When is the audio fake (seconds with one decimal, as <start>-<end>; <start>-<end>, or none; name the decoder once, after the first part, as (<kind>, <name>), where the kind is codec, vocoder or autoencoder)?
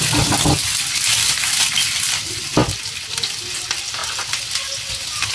none